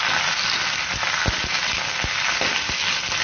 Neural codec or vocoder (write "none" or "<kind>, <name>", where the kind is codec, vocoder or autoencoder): none